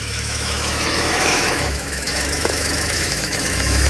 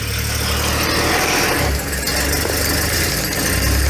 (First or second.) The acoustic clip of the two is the second